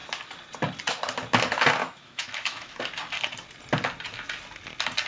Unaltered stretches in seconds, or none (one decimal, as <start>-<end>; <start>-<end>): 0.0-1.8; 2.8-5.1